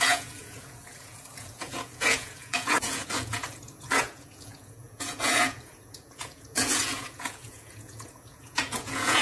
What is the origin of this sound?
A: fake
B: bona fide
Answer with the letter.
A